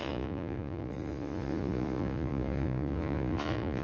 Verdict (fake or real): fake